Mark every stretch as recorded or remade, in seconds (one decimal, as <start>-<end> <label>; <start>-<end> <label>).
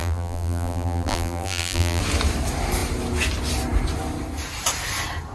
0.0-2.0 remade; 2.0-5.3 recorded